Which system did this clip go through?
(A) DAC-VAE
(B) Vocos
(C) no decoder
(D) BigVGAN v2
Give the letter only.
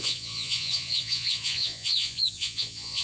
B